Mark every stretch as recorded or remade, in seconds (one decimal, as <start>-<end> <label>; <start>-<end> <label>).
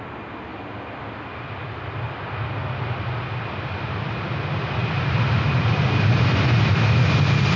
0.0-7.6 recorded